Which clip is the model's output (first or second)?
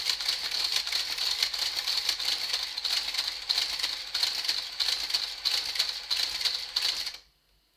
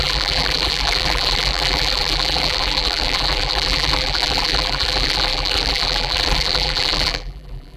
second